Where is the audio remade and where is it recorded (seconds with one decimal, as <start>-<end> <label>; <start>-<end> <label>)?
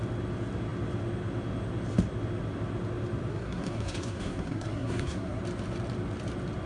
0.0-3.3 recorded; 3.3-5.4 remade; 5.4-6.7 recorded